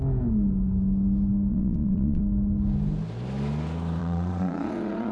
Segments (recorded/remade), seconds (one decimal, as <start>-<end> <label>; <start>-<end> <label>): 0.0-1.5 recorded; 1.5-2.2 remade; 2.2-4.0 recorded; 4.0-5.1 remade